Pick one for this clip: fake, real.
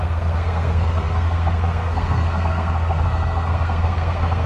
fake